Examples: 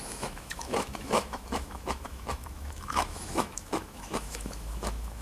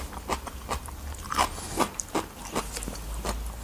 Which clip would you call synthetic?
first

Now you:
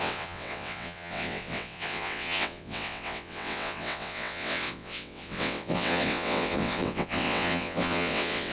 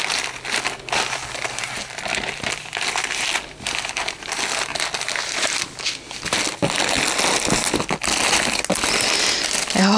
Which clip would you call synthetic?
first